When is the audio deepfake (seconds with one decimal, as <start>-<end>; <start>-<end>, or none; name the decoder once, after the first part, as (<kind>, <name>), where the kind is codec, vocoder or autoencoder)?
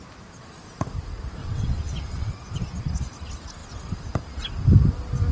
1.4-2.3 (vocoder, WaveNeXt)